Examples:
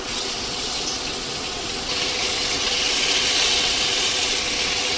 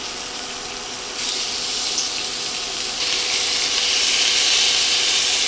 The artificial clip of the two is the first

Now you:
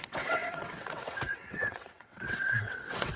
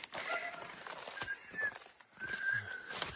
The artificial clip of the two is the first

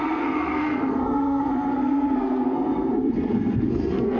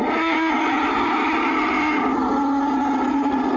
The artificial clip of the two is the first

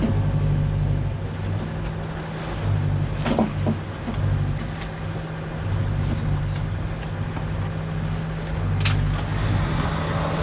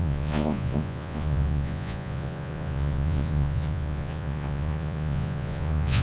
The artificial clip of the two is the second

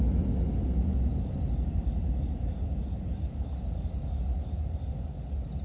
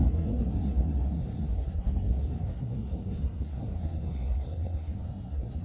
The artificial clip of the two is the second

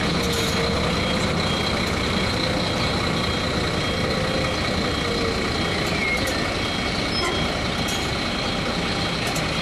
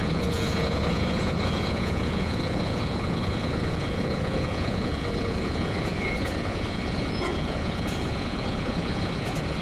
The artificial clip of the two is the second